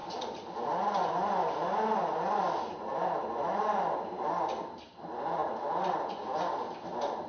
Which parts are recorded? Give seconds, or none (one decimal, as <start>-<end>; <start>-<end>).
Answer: 0.0-7.3